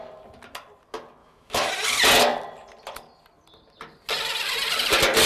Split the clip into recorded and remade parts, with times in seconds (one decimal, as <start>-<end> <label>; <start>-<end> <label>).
0.0-1.2 recorded; 1.2-1.7 remade; 1.7-5.3 recorded